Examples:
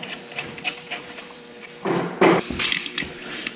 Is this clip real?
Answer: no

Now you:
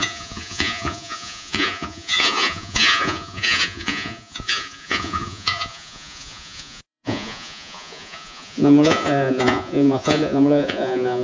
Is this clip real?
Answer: no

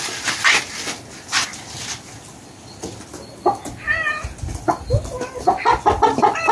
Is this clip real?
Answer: yes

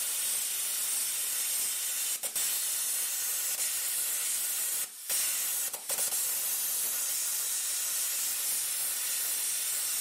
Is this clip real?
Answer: yes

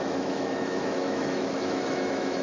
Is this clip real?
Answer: no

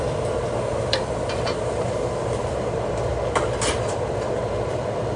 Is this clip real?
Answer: no